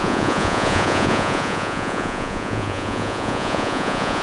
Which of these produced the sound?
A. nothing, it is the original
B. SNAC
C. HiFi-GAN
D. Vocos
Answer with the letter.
D